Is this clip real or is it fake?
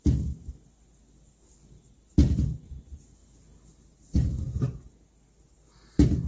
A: real